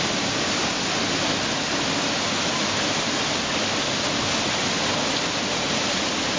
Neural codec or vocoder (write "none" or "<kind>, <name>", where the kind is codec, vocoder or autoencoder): none